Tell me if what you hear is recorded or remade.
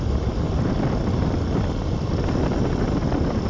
recorded